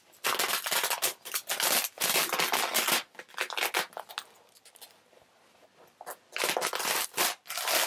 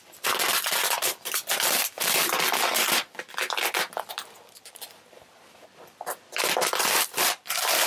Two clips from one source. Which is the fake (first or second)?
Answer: second